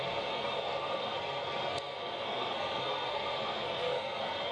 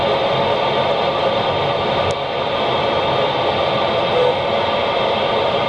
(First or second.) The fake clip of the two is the first